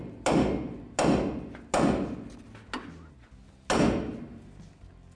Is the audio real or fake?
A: real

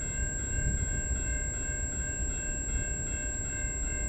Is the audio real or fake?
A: real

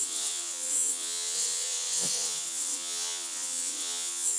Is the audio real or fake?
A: fake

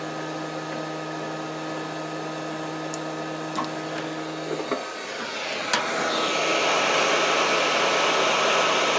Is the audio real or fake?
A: real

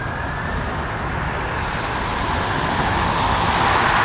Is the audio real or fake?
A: real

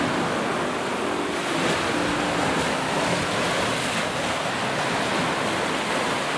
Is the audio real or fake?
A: real